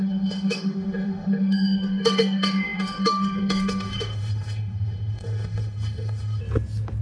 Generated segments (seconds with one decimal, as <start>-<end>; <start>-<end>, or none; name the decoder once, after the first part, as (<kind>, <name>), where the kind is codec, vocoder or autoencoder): 0.0-6.4 (autoencoder, DAC-VAE)